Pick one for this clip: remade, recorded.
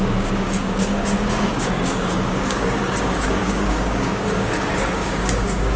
remade